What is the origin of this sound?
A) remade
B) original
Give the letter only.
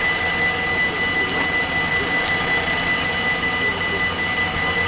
B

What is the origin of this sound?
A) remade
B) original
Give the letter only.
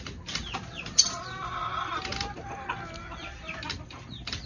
B